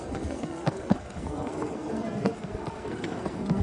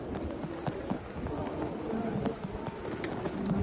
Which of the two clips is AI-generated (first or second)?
first